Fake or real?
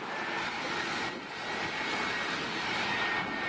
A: real